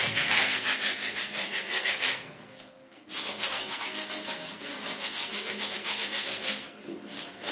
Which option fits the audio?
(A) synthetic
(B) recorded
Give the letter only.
A